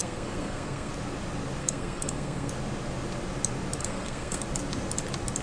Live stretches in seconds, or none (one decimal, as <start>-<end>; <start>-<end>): 0.9-1.6; 2.5-3.8; 4.4-5.4